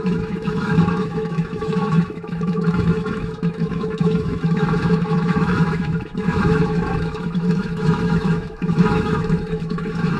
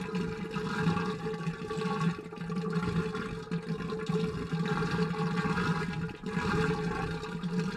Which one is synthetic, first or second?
first